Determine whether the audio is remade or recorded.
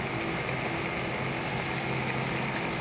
recorded